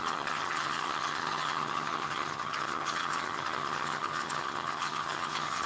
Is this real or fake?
fake